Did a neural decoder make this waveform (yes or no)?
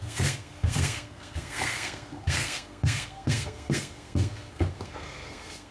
yes